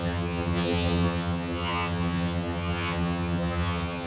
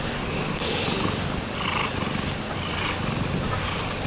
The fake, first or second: first